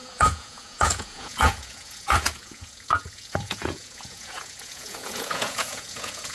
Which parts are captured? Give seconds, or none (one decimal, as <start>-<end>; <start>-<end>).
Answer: none